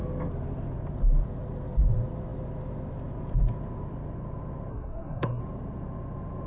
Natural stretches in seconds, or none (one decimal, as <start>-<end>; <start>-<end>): 0.0-4.7; 5.4-6.5